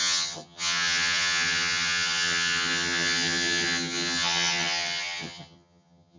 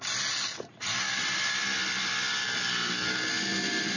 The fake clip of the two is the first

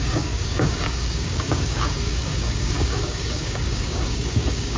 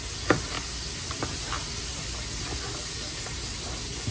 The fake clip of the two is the first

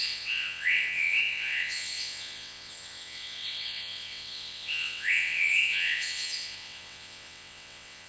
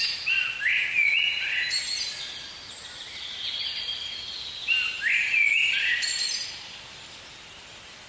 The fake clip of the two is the first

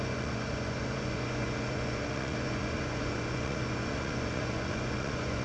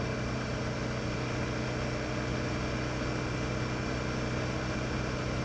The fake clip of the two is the first